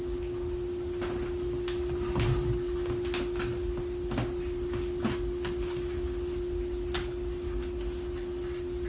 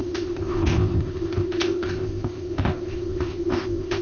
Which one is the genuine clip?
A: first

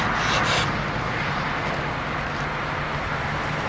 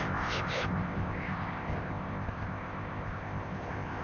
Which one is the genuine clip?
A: first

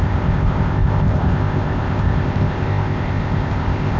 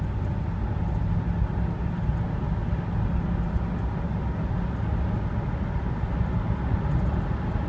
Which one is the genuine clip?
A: second